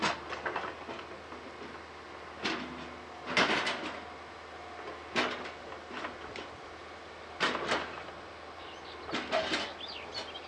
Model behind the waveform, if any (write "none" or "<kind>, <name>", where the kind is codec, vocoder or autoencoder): none